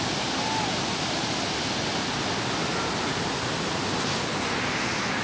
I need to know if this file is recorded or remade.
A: recorded